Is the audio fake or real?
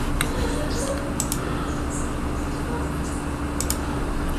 real